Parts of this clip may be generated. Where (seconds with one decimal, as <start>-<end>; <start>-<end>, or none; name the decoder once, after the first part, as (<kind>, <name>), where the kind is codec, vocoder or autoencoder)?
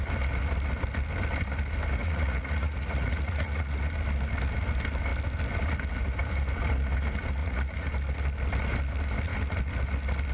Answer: 2.0-3.9 (vocoder, Vocos); 7.4-7.9